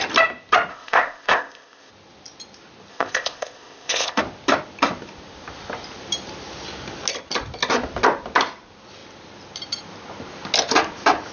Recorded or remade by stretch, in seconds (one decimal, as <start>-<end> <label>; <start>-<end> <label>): 0.0-0.7 recorded; 0.7-1.9 remade; 1.9-2.9 recorded; 2.9-4.2 remade; 4.2-11.3 recorded